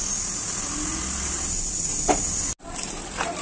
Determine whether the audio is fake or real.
real